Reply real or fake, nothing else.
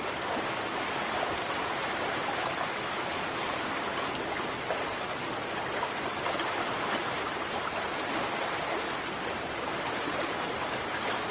real